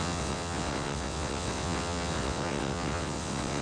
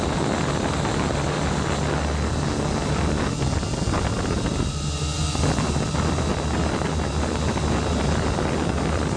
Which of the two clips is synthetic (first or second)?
first